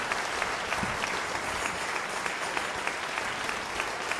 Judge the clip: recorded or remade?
remade